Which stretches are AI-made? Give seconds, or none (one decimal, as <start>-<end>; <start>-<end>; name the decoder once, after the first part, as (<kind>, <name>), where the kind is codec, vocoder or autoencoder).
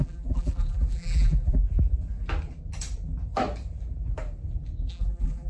0.0-1.6 (vocoder, BigVGAN v2); 4.9-5.5